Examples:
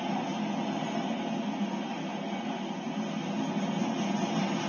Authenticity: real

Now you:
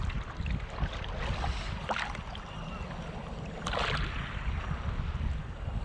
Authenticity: real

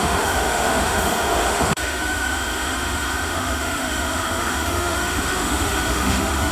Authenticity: fake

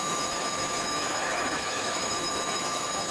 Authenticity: fake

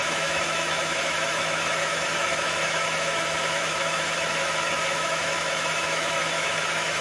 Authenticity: fake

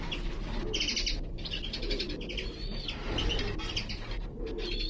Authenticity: real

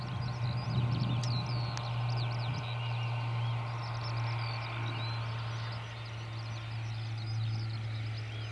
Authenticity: real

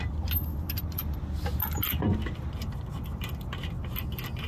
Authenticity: real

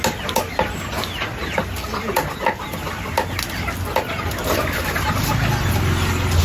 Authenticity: real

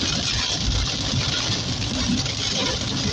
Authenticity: real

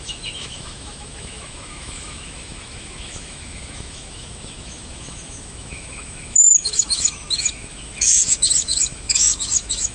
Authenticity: fake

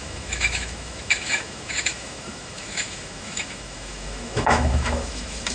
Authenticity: fake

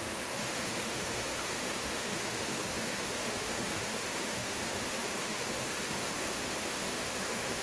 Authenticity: fake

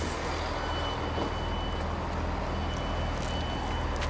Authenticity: real